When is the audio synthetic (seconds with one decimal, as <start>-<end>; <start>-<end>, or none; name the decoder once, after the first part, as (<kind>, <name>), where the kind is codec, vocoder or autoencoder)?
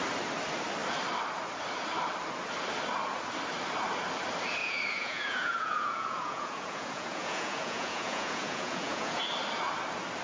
4.6-9.2 (vocoder, Vocos)